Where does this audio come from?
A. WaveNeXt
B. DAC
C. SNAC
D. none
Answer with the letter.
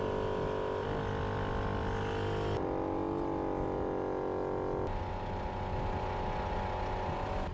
D